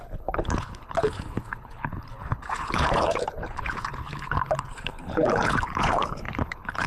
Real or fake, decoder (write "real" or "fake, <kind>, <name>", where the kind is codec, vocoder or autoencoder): fake, codec, HILCodec